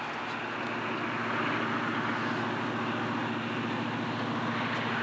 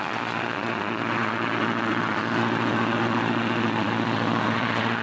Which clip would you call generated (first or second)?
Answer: second